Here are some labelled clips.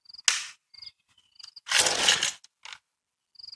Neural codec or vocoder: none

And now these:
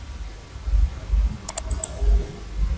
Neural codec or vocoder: none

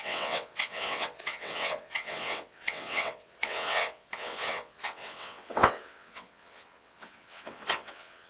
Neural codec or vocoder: vocoder, WaveNeXt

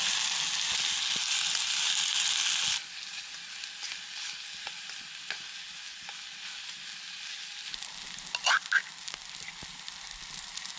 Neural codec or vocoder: none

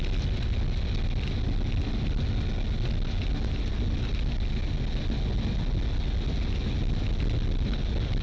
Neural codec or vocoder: none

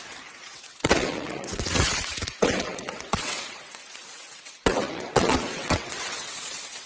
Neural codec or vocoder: vocoder, WaveNeXt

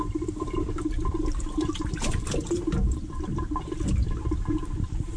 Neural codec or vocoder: none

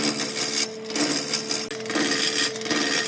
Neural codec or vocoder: none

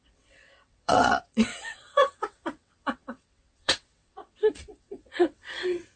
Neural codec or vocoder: vocoder, WaveNeXt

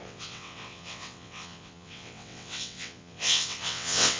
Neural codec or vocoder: vocoder, WaveNeXt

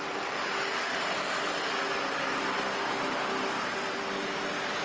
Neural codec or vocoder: none